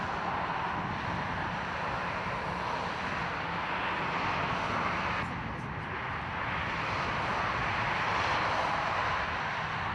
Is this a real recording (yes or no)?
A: yes